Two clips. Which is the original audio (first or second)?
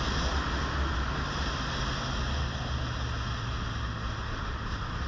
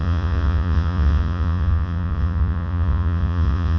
first